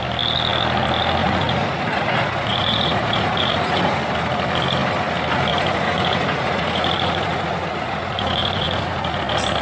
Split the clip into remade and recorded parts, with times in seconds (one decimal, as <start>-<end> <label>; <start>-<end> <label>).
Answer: 0.0-1.2 recorded; 1.2-4.0 remade; 4.0-5.5 recorded; 5.5-9.2 remade; 9.2-9.6 recorded